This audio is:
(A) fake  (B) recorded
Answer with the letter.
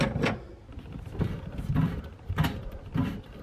B